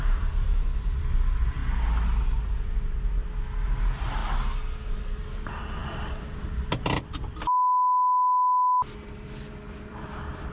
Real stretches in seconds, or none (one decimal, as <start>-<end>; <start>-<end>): 1.6-3.8; 4.2-4.9